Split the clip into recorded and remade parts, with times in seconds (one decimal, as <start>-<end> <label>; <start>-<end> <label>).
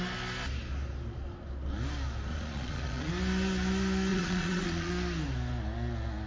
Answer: 0.0-2.3 recorded; 2.3-3.1 remade; 3.1-4.1 recorded; 4.1-4.9 remade; 4.9-6.3 recorded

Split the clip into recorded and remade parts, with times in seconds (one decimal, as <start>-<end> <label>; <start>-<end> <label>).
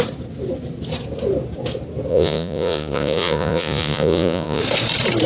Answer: 0.0-2.1 recorded; 2.1-4.6 remade; 4.6-5.3 recorded